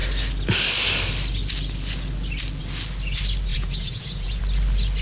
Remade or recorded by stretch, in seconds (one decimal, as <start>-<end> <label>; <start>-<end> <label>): 0.0-3.5 recorded; 3.5-4.4 remade; 4.4-5.0 recorded

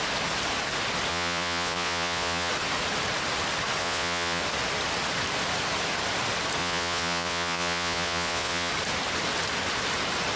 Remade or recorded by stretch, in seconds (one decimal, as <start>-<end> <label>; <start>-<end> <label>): 0.0-1.1 recorded; 1.1-2.5 remade; 2.5-3.8 recorded; 3.8-4.4 remade; 4.4-6.6 recorded; 6.6-8.7 remade; 8.7-10.4 recorded